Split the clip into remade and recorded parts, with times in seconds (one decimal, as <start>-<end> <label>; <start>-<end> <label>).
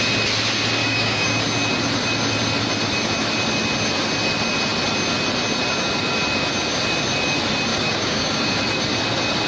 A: 0.0-0.8 recorded; 0.8-1.4 remade; 1.4-7.7 recorded; 7.7-8.5 remade; 8.5-9.5 recorded